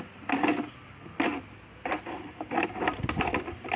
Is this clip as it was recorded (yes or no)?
yes